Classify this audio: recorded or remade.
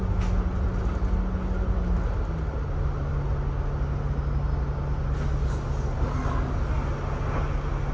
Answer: recorded